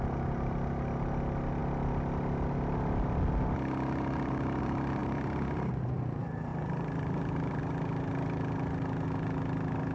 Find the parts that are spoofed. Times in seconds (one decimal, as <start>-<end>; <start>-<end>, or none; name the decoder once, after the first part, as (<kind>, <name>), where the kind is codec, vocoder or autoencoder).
5.0-5.7 (vocoder, BigVGAN v2); 6.5-7.6